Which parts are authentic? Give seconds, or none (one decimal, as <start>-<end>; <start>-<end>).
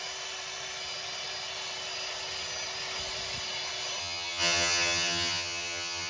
0.0-4.0